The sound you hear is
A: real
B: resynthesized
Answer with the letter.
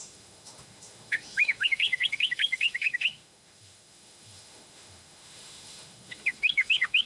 B